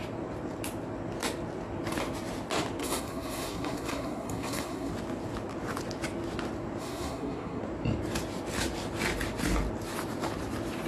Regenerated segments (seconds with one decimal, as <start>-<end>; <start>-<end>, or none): 2.8-4.9; 6.8-7.6